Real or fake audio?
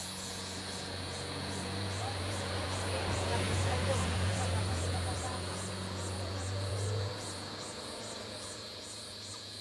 fake